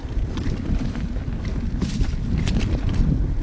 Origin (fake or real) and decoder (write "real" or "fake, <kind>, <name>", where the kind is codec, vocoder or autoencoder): real